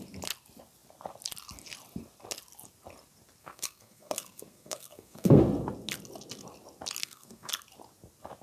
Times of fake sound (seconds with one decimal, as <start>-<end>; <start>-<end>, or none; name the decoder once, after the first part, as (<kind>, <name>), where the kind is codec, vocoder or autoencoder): 3.4-5.4 (codec, SNAC); 7.0-7.5